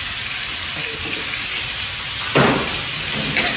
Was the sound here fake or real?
real